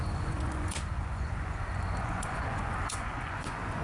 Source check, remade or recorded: remade